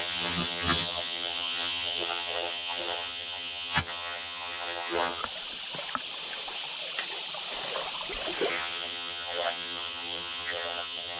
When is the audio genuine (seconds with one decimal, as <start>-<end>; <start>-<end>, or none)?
5.2-8.5

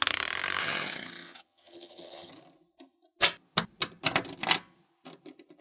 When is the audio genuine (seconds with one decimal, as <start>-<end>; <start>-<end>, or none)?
0.0-0.6; 2.3-5.6

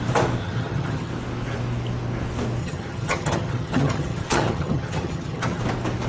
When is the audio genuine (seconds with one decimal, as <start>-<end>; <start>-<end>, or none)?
0.0-0.4; 1.1-2.6; 5.6-6.1

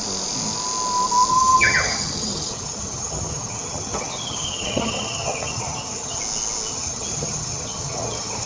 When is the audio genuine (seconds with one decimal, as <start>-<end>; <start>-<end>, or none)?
0.0-1.3; 6.2-6.7